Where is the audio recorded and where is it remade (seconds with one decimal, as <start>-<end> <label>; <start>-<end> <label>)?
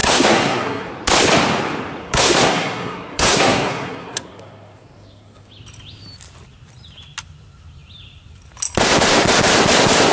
0.0-0.9 remade; 0.9-2.0 recorded; 2.0-5.5 remade; 5.5-10.1 recorded